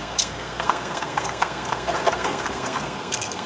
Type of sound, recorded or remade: remade